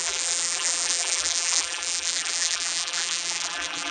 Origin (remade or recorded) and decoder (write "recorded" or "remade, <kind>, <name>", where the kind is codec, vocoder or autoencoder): remade, vocoder, BigVGAN v2